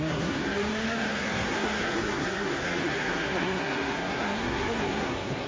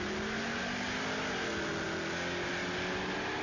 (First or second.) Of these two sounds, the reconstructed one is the first